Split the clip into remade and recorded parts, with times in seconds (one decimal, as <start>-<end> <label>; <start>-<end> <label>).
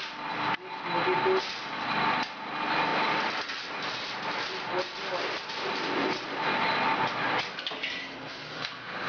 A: 0.0-8.0 recorded; 8.0-9.1 remade